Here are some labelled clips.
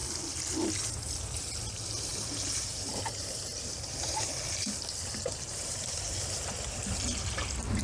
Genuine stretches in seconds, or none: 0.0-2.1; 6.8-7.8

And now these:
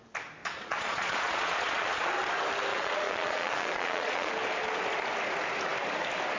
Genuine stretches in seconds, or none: 0.0-0.4; 2.1-2.7; 4.3-6.4

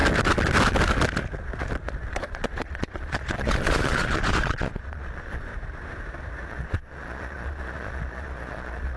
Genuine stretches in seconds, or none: 0.0-2.1; 5.5-6.5

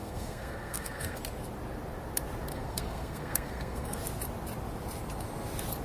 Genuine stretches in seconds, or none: 1.2-2.5; 4.0-5.8

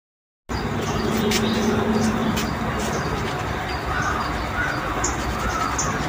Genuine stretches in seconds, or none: 0.0-6.1